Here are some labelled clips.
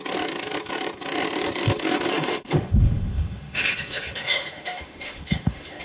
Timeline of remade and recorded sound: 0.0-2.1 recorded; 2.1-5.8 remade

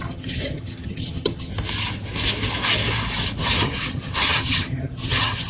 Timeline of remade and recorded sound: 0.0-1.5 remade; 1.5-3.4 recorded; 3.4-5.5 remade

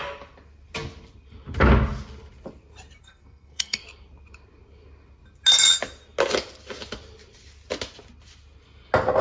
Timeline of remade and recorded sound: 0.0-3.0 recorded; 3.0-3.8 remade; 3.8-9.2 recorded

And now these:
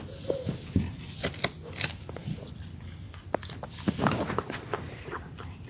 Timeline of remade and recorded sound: 0.0-5.7 recorded